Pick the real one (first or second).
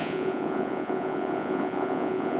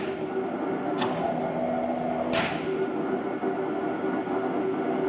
second